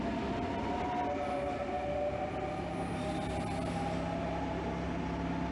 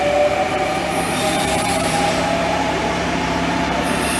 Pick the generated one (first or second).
second